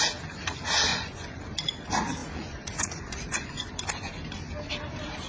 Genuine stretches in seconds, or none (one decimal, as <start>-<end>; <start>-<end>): 0.0-0.9; 1.4-2.2; 3.7-5.3